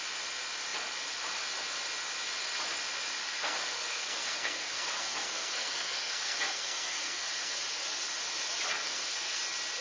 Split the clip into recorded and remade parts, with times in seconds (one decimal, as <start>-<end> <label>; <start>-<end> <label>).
0.0-3.2 recorded; 3.2-7.6 remade; 7.6-8.7 recorded; 8.7-9.4 remade; 9.4-9.8 recorded